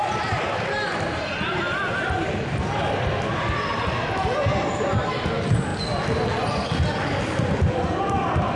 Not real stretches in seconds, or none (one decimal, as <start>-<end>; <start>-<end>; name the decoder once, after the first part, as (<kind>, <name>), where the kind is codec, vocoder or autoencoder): none